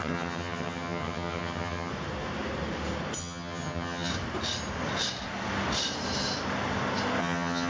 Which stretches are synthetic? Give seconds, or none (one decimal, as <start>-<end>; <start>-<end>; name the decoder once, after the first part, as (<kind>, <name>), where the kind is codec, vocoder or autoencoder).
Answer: 0.0-1.9 (vocoder, HiFi-GAN); 3.2-4.1; 7.2-7.7